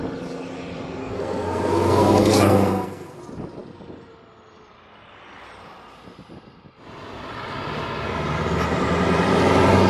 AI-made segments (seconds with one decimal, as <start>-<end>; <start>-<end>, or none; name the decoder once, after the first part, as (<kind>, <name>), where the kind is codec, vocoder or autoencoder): 1.0-3.2 (codec, SNAC)